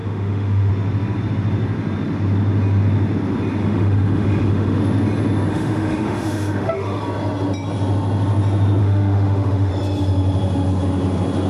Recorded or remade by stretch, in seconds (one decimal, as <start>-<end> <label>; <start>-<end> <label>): 0.0-0.7 remade; 0.7-3.6 recorded; 3.6-4.8 remade; 4.8-5.5 recorded; 5.5-7.0 remade; 7.0-8.8 recorded; 8.8-9.7 remade; 9.7-11.5 recorded